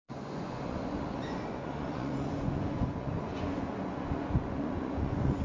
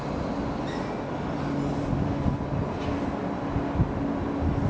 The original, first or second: second